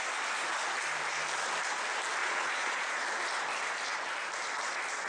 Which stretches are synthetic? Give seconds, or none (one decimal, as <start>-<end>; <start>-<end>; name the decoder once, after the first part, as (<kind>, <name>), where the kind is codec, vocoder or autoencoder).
2.2-3.0 (vocoder, Vocos)